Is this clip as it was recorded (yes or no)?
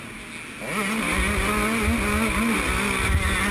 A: yes